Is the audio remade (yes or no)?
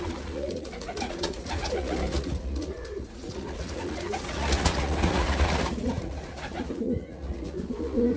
yes